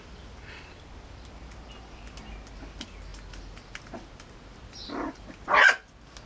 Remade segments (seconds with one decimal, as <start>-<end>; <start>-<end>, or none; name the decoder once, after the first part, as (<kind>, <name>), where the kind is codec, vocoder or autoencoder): none